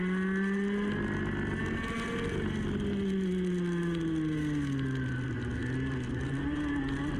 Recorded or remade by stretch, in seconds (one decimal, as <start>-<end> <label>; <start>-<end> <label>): 0.0-7.2 recorded